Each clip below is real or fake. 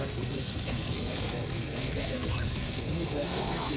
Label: fake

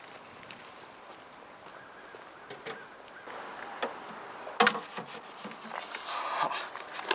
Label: real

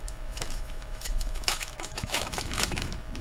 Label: fake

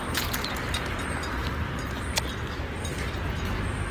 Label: real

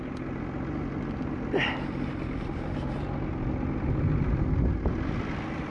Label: real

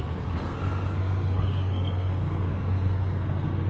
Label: fake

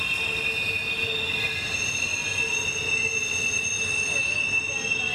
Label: real